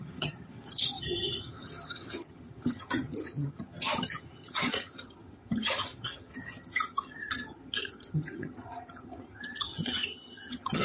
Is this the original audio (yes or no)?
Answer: no